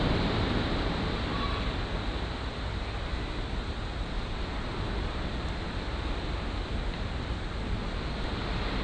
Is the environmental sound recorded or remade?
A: recorded